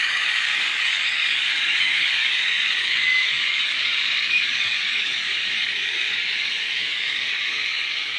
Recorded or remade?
remade